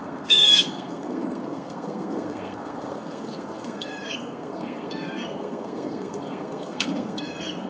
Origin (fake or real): fake